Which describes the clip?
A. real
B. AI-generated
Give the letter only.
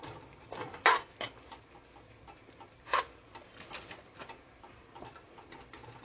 A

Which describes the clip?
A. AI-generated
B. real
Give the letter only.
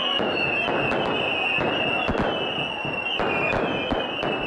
B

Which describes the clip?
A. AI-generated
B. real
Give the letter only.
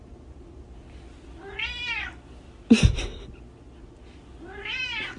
B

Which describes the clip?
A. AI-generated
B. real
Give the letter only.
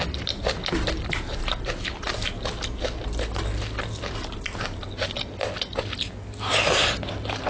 B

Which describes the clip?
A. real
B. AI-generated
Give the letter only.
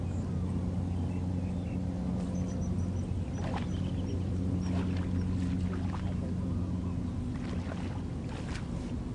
A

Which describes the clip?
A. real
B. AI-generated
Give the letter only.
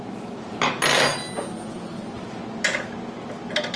A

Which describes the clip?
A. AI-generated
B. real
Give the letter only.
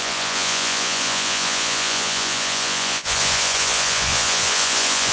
A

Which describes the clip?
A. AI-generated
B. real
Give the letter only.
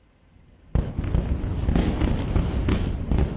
B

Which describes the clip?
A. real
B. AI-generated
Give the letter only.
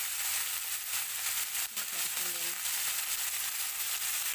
A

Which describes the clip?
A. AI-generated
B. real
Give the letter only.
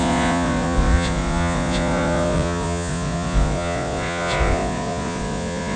A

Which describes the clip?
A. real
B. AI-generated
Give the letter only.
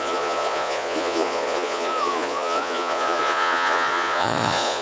B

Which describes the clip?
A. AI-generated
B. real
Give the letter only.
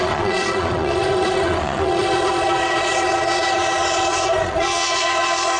A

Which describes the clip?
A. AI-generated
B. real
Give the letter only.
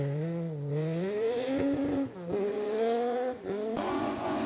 A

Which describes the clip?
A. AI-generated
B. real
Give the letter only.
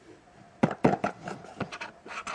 B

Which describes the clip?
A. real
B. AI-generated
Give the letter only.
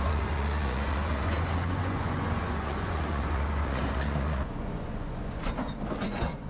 B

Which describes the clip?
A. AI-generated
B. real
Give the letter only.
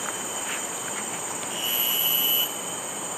B